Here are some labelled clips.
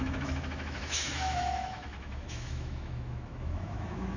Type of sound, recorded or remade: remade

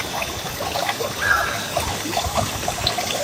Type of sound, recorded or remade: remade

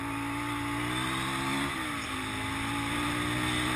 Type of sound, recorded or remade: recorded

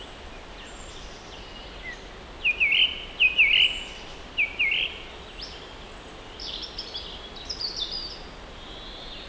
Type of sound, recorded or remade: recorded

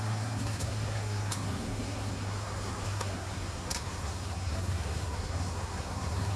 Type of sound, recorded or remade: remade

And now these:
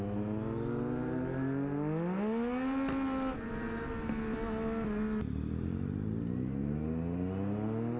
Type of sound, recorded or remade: recorded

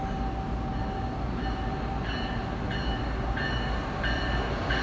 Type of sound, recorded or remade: recorded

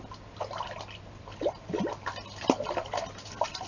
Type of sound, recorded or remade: recorded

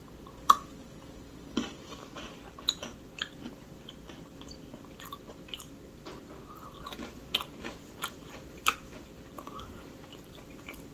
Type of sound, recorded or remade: recorded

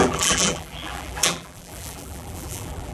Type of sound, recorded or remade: remade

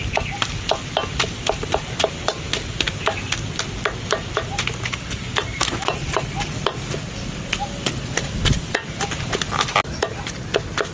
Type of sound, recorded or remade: recorded